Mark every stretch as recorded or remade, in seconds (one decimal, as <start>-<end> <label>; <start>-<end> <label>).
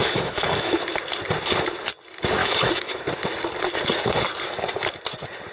0.0-0.8 remade; 0.8-2.4 recorded; 2.4-3.0 remade; 3.0-5.5 recorded